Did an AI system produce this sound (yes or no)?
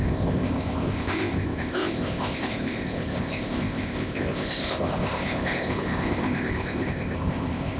yes